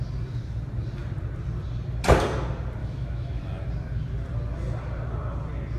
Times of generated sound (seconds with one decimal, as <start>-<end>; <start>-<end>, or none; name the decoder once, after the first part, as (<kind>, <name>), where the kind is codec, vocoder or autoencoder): 2.8-3.4 (autoencoder, DAC-VAE)